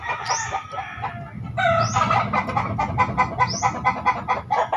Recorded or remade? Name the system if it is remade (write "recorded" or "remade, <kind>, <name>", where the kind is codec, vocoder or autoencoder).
recorded